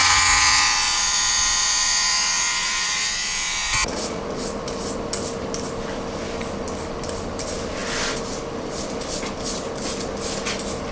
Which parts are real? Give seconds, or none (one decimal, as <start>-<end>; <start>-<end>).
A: 4.2-10.9

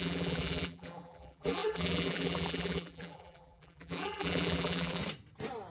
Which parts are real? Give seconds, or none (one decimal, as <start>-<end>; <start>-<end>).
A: 5.0-5.7

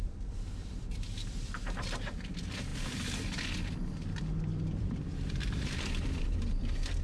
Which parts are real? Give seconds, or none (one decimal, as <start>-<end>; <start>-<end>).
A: none

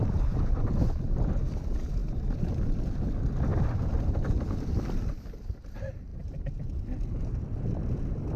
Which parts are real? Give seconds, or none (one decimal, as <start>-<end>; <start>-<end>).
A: 0.0-8.4

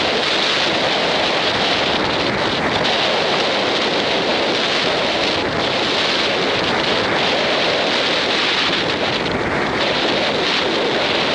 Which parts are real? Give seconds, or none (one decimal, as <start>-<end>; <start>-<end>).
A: 0.0-11.3